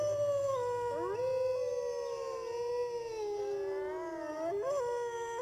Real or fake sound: real